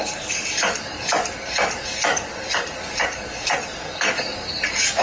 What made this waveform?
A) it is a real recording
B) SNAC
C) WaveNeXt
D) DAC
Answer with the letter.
D